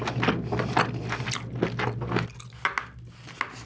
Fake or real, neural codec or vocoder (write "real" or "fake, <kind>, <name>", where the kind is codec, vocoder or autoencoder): real